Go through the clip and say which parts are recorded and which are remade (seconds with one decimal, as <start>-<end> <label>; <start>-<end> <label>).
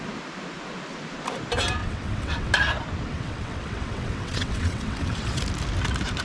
0.0-1.8 recorded; 1.8-2.5 remade; 2.5-3.1 recorded; 3.1-5.4 remade; 5.4-6.2 recorded